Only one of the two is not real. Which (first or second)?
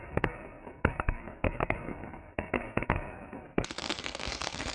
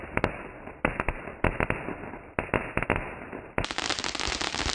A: first